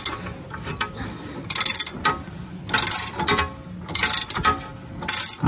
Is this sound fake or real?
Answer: real